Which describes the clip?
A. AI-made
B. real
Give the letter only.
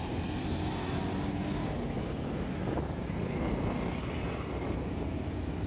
B